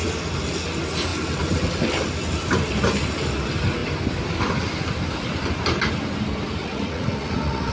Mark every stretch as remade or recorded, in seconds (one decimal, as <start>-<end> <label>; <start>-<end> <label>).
0.0-6.6 recorded; 6.6-7.7 remade